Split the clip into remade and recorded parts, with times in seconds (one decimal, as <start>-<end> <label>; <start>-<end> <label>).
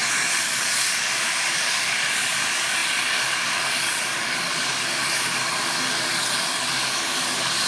0.0-7.7 remade